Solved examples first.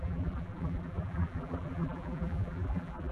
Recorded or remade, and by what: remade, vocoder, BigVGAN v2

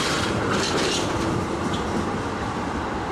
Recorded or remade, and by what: remade, vocoder, BigVGAN v2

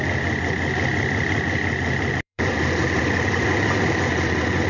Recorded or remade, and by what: remade, vocoder, BigVGAN v2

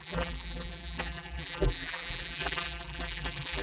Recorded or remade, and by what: remade, vocoder, BigVGAN v2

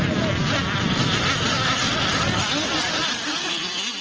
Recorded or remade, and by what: recorded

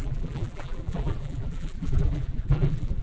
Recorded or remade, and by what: remade, vocoder, BigVGAN v2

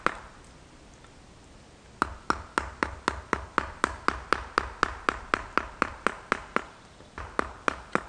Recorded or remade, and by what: recorded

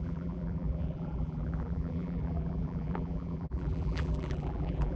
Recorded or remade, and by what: remade, vocoder, BigVGAN v2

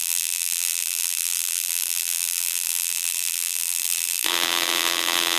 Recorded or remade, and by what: remade, vocoder, BigVGAN v2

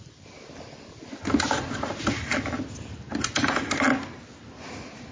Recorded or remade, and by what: recorded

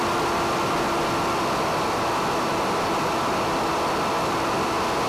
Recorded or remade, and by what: recorded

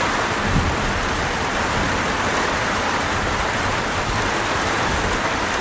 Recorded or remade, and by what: remade, vocoder, BigVGAN v2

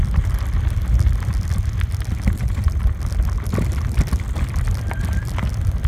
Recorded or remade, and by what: recorded